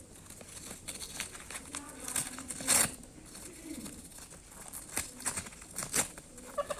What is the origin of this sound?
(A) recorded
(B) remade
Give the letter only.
A